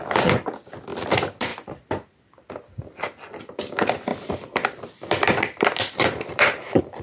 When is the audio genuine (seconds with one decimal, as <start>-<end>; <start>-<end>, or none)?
1.5-3.4